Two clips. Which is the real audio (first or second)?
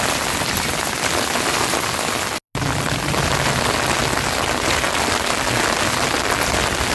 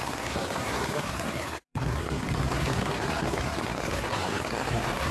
first